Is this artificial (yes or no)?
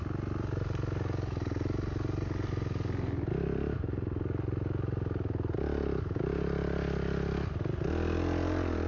no